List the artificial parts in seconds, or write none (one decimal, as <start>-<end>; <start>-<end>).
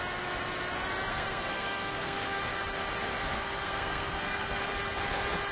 1.1-2.4; 3.2-4.6